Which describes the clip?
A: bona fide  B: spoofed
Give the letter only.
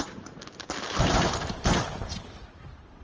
B